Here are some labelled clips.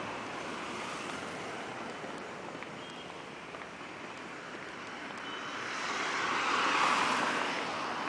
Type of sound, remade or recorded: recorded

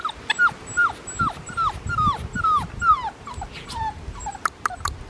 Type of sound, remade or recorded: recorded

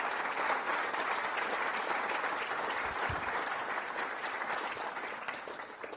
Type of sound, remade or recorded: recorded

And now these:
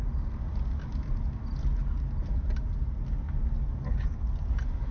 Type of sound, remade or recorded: recorded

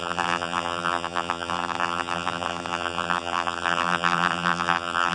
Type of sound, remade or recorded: remade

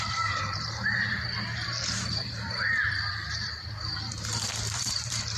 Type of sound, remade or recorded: remade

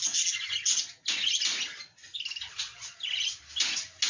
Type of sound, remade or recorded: recorded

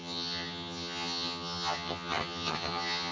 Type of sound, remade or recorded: remade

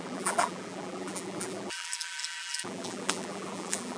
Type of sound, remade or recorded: remade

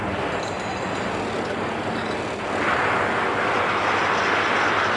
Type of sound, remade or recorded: recorded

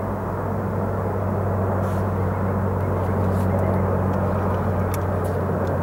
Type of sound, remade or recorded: recorded